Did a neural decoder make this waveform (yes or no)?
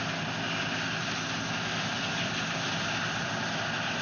no